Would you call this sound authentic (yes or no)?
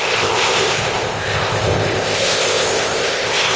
no